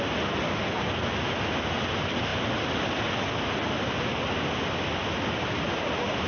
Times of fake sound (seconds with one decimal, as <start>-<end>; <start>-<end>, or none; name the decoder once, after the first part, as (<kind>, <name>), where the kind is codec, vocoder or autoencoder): none